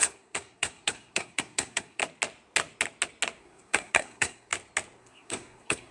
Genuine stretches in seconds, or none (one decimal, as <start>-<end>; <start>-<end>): 2.0-3.4; 4.5-5.0

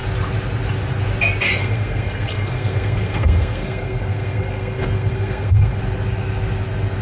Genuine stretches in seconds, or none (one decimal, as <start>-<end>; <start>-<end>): 0.0-1.6; 5.8-7.0

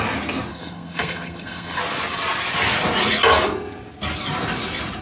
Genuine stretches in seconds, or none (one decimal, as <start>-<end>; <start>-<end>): 0.0-0.5; 1.8-5.0

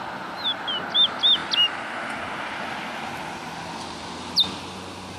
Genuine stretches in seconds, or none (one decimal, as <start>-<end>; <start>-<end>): 0.0-5.2

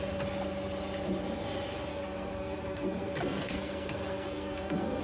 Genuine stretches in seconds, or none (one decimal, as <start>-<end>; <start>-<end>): 0.0-1.9

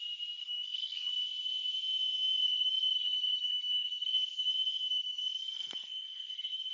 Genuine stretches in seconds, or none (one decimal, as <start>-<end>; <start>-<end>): 0.0-0.4; 1.1-2.4

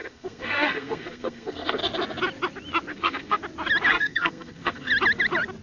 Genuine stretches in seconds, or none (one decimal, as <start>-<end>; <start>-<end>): 1.8-2.9; 3.4-3.9; 4.9-5.6

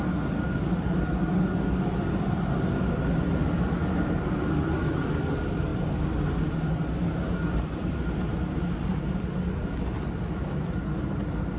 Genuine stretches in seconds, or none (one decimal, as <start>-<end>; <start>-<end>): 0.0-11.6